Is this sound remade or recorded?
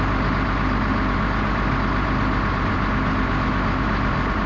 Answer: recorded